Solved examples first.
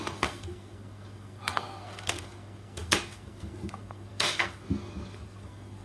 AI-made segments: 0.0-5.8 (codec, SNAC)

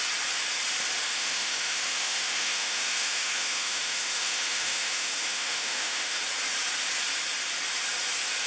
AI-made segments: 1.1-6.2 (autoencoder, DAC-VAE)

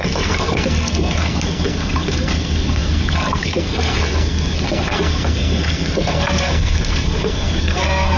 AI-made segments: 0.0-8.2 (codec, SNAC)